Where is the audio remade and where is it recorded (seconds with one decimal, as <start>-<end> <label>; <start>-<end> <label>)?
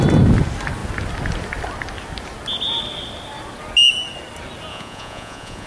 0.0-4.7 recorded; 4.7-5.7 remade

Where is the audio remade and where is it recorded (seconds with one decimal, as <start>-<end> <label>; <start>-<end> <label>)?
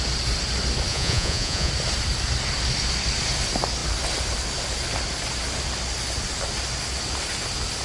0.0-0.9 recorded; 0.9-1.7 remade; 1.7-7.8 recorded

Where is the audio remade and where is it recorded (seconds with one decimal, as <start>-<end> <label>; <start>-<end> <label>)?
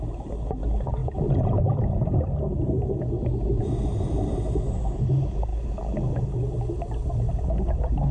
0.0-8.1 recorded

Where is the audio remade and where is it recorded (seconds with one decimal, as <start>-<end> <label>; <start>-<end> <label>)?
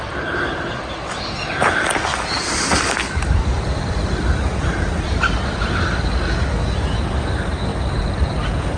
0.0-8.8 recorded